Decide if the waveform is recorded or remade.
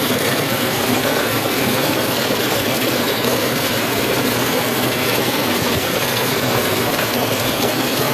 remade